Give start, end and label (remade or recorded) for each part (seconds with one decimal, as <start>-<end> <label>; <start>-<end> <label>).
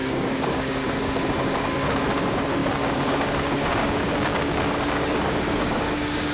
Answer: 0.0-6.3 remade